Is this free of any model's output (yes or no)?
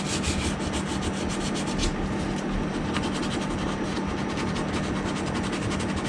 yes